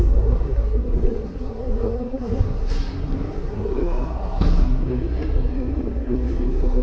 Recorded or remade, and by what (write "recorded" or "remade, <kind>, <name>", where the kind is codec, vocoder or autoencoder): remade, codec, SNAC